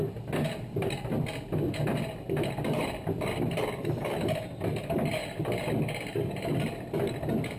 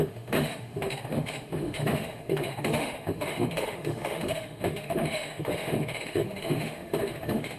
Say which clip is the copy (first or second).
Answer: second